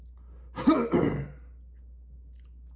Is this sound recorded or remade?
recorded